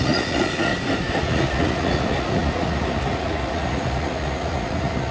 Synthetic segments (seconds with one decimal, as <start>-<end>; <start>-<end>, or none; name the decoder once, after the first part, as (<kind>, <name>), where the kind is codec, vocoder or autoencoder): 0.0-0.7 (vocoder, Vocos); 1.2-5.1